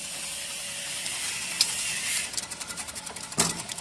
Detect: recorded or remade remade